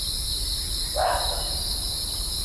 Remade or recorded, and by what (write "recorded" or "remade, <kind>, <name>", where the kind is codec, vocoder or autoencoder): recorded